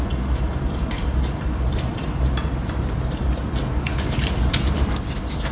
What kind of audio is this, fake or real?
fake